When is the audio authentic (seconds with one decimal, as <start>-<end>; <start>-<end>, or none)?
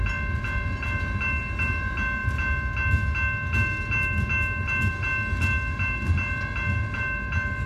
0.0-7.7